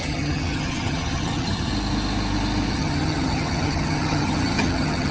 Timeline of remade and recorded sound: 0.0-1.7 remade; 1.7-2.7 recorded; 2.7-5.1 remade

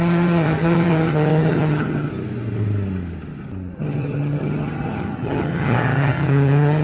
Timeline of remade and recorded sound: 0.0-2.1 remade; 2.1-3.8 recorded; 3.8-6.8 remade

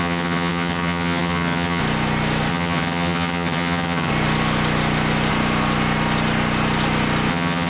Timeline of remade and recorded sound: 0.0-1.8 remade; 1.8-2.5 recorded; 2.5-4.1 remade; 4.1-7.3 recorded; 7.3-7.7 remade

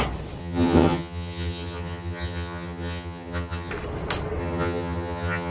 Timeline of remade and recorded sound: 0.0-0.4 recorded; 0.4-3.7 remade; 3.7-4.4 recorded; 4.4-5.5 remade

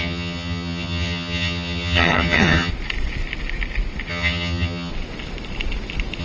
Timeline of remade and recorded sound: 0.0-2.7 remade; 2.7-4.1 recorded; 4.1-4.9 remade; 4.9-6.2 recorded

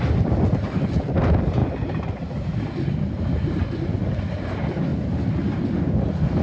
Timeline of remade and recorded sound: 0.0-6.4 recorded